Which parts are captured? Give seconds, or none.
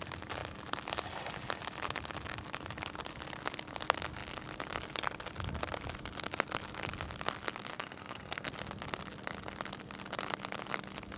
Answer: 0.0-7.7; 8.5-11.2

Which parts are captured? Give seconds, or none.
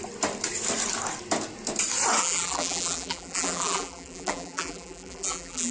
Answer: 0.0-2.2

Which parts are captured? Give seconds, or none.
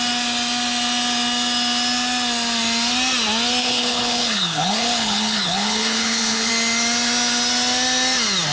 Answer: 0.0-3.6; 6.5-8.5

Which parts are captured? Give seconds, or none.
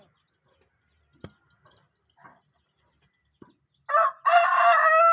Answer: 0.0-5.1